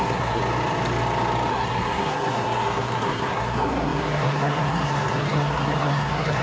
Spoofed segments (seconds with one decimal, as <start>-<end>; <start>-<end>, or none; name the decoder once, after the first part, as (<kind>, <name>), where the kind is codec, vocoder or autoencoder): 0.0-0.4 (codec, SNAC); 1.5-6.4